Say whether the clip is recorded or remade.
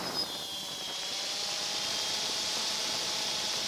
remade